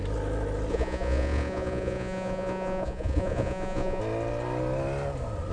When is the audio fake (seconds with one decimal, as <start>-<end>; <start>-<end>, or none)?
0.7-4.0